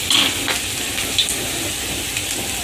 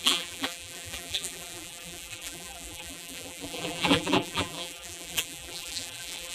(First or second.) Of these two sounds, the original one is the first